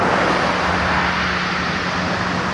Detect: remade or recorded recorded